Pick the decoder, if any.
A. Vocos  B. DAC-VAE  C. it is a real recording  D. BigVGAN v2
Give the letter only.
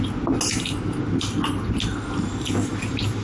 C